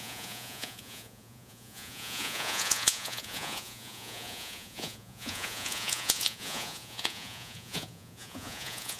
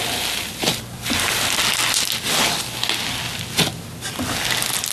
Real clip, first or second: second